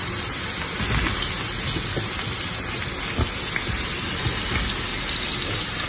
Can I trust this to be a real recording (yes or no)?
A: yes